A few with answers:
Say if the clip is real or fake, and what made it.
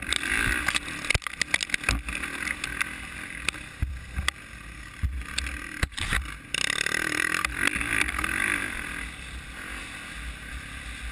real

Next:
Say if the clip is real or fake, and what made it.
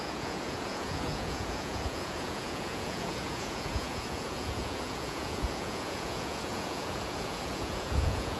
fake, vocoder, Vocos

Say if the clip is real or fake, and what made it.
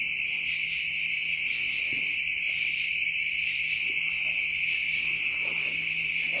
real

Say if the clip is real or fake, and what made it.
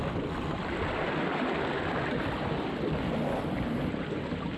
real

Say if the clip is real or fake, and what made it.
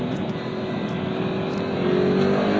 real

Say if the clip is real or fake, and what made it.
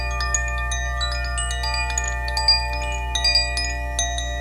real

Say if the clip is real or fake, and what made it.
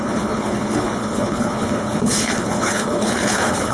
fake, codec, HILCodec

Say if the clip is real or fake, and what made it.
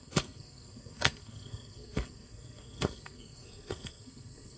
fake, codec, SNAC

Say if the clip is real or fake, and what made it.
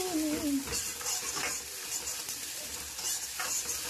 real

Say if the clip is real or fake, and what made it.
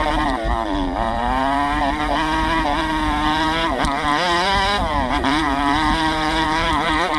fake, vocoder, BigVGAN v2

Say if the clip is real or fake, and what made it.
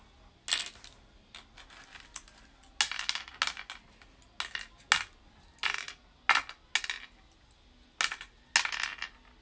real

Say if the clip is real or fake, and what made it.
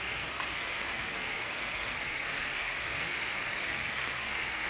fake, codec, SNAC